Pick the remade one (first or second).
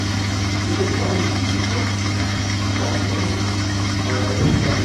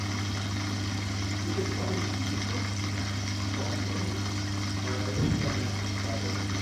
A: first